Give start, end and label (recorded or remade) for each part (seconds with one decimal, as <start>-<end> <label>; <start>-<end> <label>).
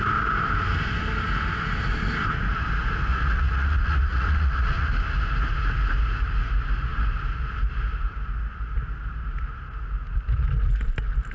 0.0-3.1 recorded; 3.1-4.9 remade; 4.9-11.3 recorded